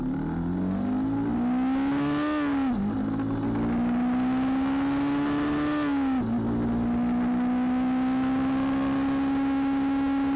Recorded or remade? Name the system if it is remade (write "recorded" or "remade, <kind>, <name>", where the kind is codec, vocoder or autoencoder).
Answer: recorded